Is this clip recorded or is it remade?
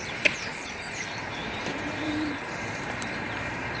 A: remade